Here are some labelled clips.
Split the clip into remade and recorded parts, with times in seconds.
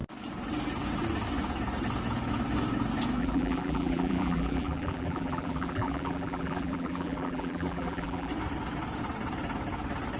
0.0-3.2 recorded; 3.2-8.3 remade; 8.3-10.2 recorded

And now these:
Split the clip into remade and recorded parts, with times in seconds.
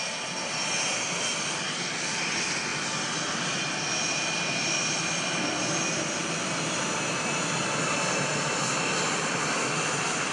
0.0-10.3 recorded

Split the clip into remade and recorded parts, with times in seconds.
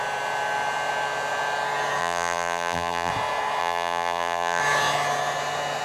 0.0-2.0 recorded; 2.0-3.1 remade; 3.1-3.6 recorded; 3.6-4.6 remade; 4.6-5.8 recorded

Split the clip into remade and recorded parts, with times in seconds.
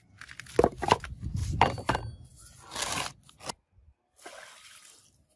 0.0-1.4 recorded; 1.4-1.9 remade; 1.9-5.4 recorded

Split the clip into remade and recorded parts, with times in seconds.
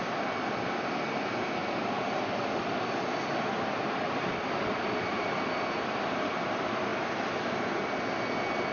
0.0-6.9 remade; 6.9-8.7 recorded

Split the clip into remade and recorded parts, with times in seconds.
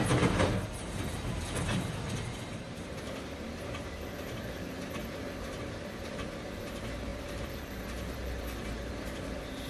0.0-5.0 remade; 5.0-5.6 recorded; 5.6-9.7 remade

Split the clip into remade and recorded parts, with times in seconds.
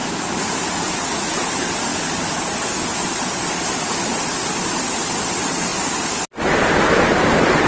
0.0-0.7 remade; 0.7-7.7 recorded